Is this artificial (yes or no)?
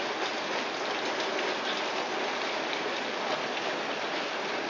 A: no